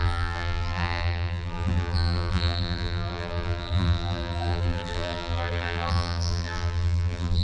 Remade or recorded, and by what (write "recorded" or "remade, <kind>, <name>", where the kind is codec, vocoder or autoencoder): remade, vocoder, BigVGAN v2